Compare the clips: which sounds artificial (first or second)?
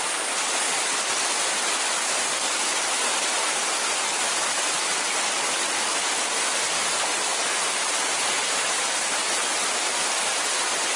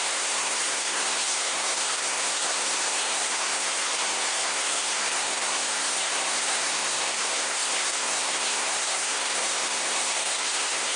second